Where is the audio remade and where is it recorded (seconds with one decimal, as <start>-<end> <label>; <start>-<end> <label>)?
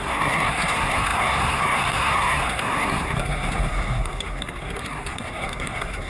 0.0-6.1 remade